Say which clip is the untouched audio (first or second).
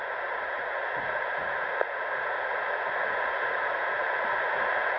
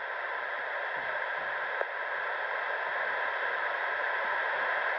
second